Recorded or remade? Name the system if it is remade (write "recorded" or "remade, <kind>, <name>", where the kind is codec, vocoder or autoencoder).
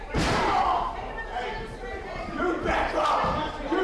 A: remade, vocoder, BigVGAN v2